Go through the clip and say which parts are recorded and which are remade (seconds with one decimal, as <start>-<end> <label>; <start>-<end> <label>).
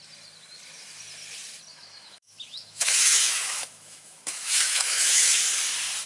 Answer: 0.0-1.7 recorded; 1.7-5.4 remade; 5.4-6.1 recorded